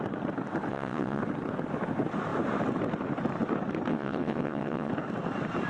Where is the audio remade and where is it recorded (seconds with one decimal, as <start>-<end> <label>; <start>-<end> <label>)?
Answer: 0.0-0.7 recorded; 0.7-1.2 remade; 1.2-3.9 recorded; 3.9-4.9 remade; 4.9-5.7 recorded